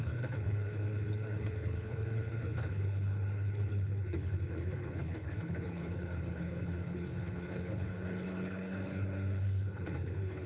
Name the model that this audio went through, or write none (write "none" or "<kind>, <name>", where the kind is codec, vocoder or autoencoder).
codec, HILCodec